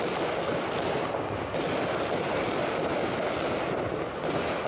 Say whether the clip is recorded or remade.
recorded